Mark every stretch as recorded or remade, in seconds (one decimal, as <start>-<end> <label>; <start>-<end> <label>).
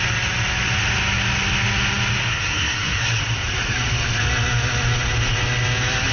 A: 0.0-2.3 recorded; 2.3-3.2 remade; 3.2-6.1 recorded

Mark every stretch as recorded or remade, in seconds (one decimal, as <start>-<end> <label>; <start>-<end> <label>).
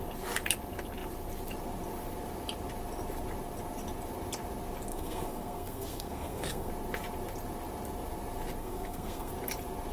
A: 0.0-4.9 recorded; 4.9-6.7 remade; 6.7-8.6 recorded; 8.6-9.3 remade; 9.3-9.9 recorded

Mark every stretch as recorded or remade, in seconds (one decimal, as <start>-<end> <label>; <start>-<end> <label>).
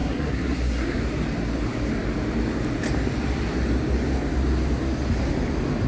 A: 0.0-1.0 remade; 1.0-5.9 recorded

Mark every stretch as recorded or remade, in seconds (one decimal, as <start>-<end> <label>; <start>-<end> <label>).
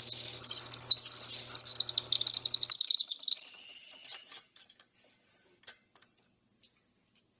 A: 0.0-7.4 recorded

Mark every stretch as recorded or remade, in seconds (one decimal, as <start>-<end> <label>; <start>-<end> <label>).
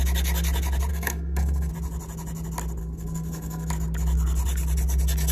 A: 0.0-0.9 recorded; 0.9-1.7 remade; 1.7-2.8 recorded; 2.8-3.7 remade; 3.7-5.3 recorded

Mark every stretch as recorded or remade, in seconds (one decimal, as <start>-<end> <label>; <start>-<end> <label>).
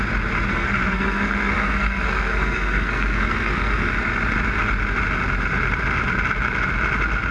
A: 0.0-0.5 recorded; 0.5-3.9 remade; 3.9-7.3 recorded